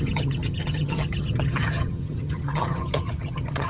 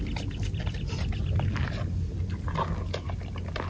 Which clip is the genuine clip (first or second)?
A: second